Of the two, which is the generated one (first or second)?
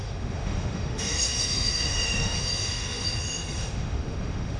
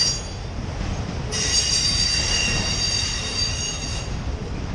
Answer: first